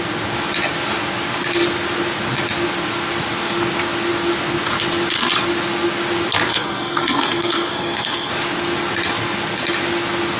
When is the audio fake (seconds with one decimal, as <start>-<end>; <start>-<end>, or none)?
6.5-8.3